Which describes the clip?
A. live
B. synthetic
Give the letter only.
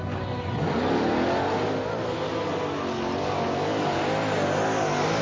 A